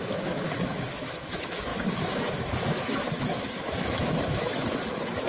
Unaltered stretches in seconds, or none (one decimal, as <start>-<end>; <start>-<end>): none